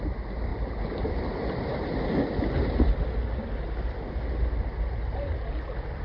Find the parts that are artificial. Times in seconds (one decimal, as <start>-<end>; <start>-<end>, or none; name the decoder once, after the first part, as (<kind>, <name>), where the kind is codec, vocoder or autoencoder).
none